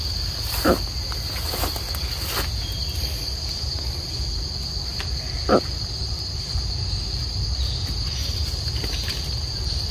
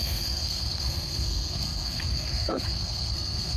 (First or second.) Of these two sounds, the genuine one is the first